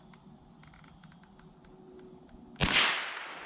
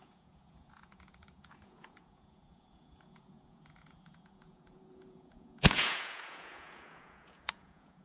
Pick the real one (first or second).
first